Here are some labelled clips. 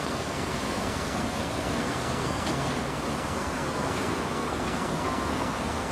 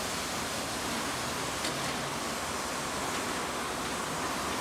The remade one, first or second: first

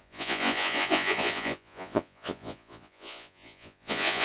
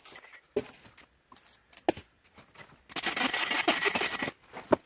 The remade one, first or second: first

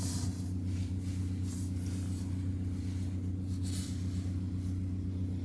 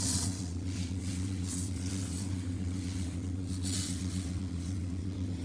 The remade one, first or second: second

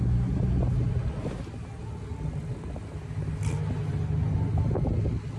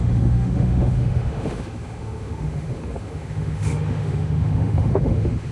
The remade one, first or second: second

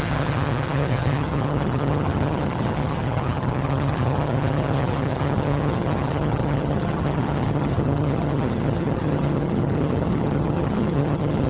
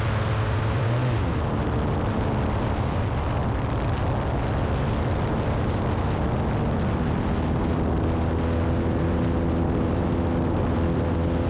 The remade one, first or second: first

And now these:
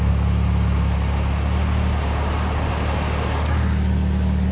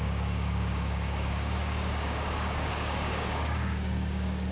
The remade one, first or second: second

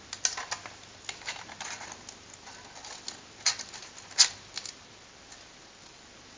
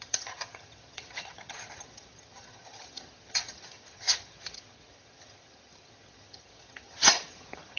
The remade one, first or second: second